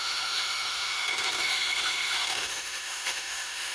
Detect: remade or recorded remade